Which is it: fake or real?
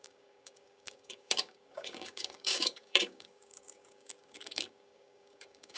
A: fake